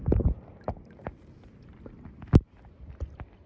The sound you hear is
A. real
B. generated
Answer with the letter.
A